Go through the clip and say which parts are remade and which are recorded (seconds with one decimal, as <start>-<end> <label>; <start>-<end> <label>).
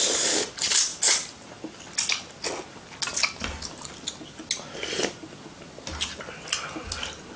0.0-7.4 recorded